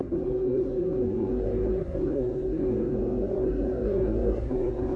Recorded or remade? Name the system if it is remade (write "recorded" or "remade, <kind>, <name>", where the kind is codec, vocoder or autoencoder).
remade, codec, SNAC